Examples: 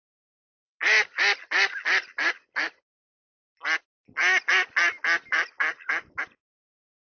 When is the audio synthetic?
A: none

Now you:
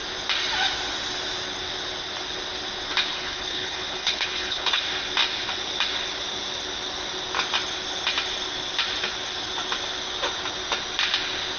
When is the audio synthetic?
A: 3.1-4.8 (codec, HILCodec)

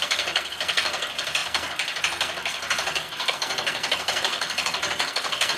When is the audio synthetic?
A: 0.0-5.6 (codec, SNAC)

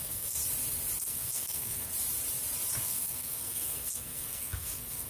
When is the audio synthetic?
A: 0.0-0.4 (codec, SNAC); 1.0-1.9; 2.8-5.1

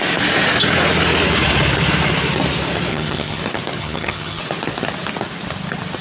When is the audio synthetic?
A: 2.9-3.4 (vocoder, HiFi-GAN); 3.8-4.4

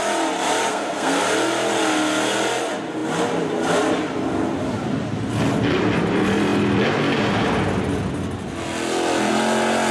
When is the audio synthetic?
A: 0.7-1.2 (codec, SNAC)